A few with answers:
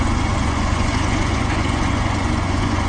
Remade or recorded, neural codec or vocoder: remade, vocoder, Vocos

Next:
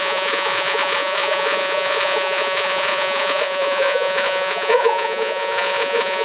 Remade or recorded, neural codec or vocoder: remade, vocoder, Vocos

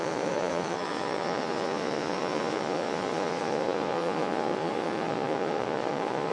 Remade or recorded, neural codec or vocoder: remade, vocoder, Vocos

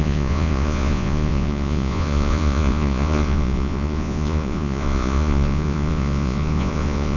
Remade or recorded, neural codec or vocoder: remade, vocoder, Vocos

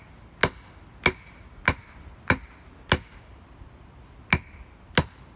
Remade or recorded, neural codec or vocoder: recorded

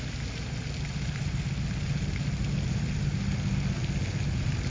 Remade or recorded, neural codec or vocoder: recorded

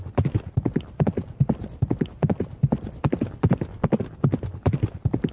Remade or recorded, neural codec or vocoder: recorded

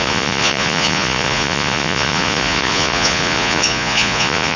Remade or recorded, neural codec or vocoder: remade, vocoder, Vocos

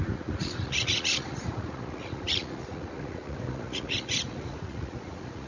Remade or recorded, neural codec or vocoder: remade, vocoder, Vocos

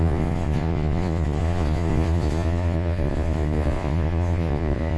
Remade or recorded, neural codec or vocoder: remade, vocoder, Vocos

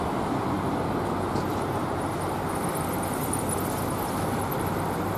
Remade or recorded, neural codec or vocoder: recorded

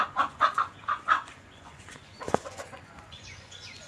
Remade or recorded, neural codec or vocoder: remade, vocoder, Vocos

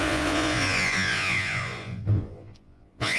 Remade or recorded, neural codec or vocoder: remade, vocoder, Vocos